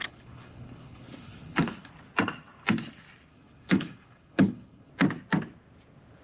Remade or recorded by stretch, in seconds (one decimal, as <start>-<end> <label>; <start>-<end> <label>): 0.0-1.9 remade; 1.9-3.3 recorded; 3.3-4.9 remade; 4.9-6.2 recorded